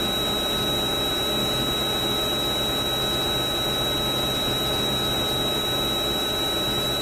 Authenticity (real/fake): real